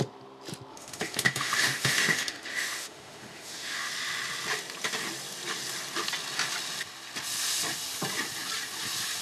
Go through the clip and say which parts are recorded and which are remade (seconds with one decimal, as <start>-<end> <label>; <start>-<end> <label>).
0.0-0.7 recorded; 0.7-3.9 remade; 3.9-9.2 recorded